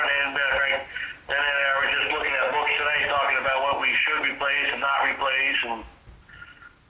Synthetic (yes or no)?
no